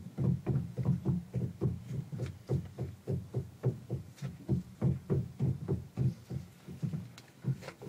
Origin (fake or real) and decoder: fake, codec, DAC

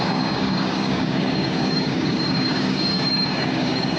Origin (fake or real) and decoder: fake, codec, DAC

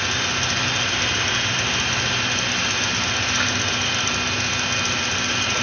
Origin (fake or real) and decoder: real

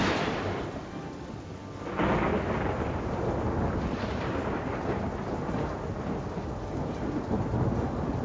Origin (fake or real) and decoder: real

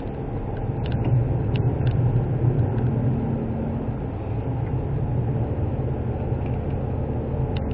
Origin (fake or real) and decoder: real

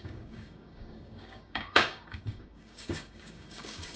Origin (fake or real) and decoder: fake, codec, DAC